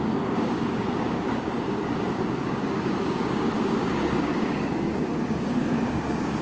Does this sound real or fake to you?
fake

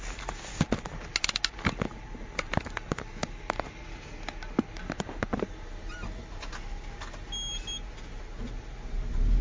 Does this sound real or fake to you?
real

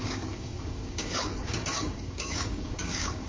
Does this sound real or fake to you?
fake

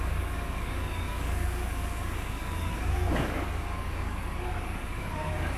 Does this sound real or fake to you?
fake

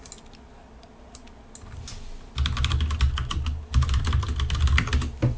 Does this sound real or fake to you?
real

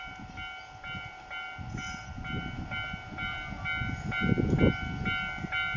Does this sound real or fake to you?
real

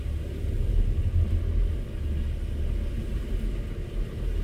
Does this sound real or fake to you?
real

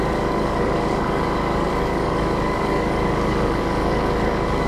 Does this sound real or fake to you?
fake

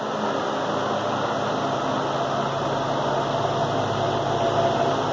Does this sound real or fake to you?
real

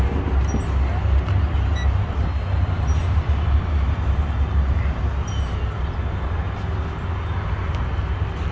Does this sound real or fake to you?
real